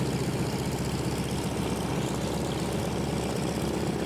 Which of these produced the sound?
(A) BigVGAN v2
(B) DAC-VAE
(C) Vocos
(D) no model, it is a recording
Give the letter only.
D